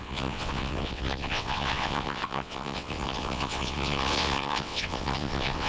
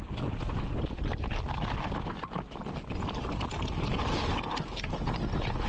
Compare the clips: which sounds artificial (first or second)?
first